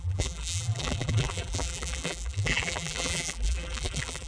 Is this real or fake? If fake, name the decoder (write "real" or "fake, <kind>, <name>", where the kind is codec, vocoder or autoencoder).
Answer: fake, vocoder, BigVGAN v2